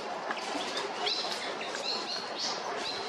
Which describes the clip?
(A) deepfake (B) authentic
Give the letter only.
B